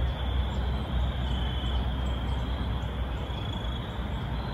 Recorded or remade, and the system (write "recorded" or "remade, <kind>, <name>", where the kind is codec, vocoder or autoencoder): recorded